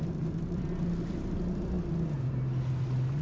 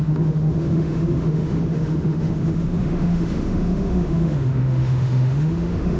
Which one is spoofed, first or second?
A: second